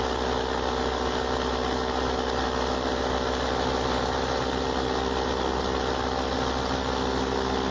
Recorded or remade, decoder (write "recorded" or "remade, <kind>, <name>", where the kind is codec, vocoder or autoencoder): recorded